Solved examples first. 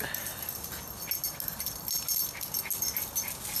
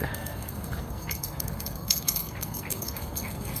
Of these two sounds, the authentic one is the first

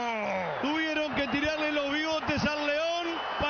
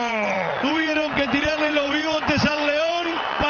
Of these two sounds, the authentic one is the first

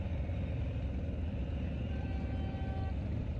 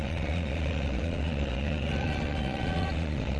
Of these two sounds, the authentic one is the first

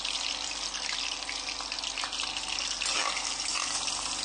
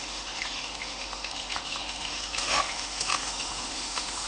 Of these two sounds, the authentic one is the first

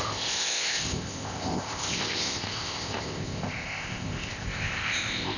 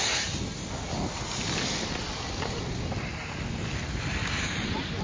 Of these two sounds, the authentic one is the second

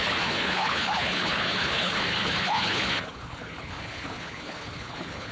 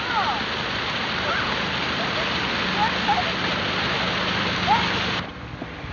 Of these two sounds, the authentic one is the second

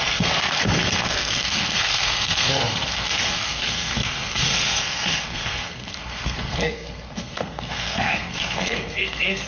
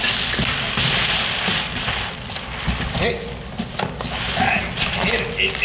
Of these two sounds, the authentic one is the second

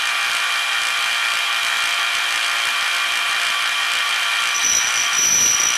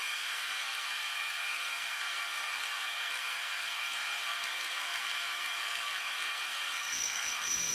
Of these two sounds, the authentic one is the first